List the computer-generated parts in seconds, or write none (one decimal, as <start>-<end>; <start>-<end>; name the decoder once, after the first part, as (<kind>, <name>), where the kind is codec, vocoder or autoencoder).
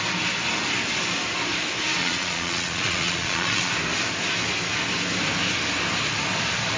2.0-3.7 (vocoder, Vocos)